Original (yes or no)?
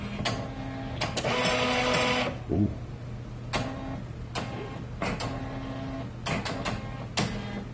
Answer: yes